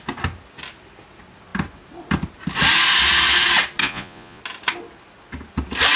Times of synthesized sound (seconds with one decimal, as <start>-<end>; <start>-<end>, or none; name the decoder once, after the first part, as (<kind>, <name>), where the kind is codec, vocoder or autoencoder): 3.8-4.4 (vocoder, Vocos)